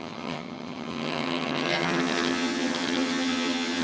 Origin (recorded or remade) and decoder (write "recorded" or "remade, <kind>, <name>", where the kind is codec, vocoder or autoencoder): remade, vocoder, HiFi-GAN